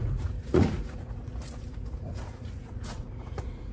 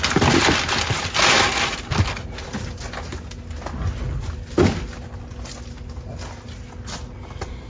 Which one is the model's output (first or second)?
first